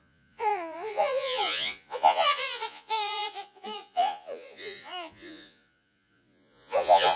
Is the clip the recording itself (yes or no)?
no